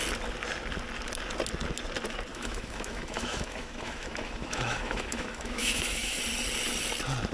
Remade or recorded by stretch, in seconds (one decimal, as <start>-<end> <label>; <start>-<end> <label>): 0.0-2.3 recorded; 2.3-6.2 remade; 6.2-7.3 recorded

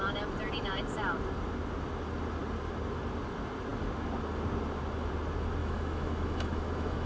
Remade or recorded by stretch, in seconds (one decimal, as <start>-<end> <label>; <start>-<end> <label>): 0.0-5.6 recorded; 5.6-7.1 remade

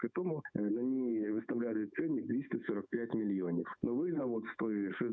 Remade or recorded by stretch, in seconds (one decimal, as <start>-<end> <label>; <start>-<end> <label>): 0.0-5.1 remade

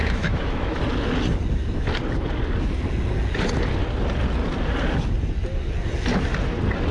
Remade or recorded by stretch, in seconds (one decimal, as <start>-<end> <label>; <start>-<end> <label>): 0.0-0.8 remade; 0.8-6.9 recorded

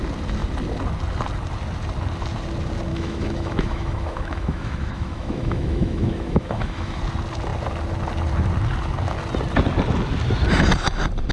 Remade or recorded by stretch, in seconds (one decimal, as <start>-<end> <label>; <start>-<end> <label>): 0.0-2.9 recorded; 2.9-7.0 remade; 7.0-11.3 recorded

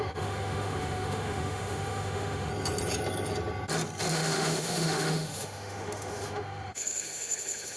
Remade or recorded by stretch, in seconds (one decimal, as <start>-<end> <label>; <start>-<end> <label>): 0.0-2.5 remade; 2.5-4.1 recorded; 4.1-7.8 remade

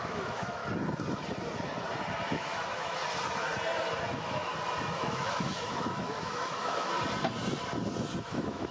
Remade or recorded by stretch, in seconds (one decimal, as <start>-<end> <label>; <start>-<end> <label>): 0.0-0.6 remade; 0.6-2.3 recorded; 2.3-3.0 remade; 3.0-4.0 recorded; 4.0-4.5 remade; 4.5-5.0 recorded; 5.0-6.9 remade; 6.9-8.2 recorded; 8.2-8.7 remade